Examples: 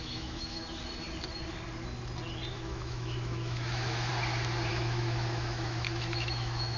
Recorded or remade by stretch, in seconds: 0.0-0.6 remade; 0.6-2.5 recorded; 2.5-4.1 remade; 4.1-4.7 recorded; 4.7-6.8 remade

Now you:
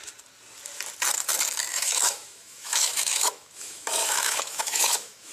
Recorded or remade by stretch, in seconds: 0.0-1.7 recorded; 1.7-5.3 remade

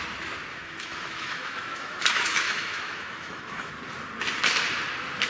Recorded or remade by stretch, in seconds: 0.0-0.5 recorded; 0.5-3.7 remade; 3.7-5.3 recorded